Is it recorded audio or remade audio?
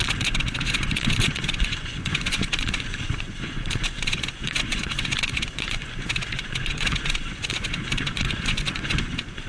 remade